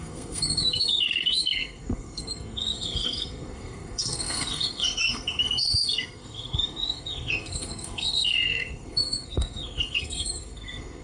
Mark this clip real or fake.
fake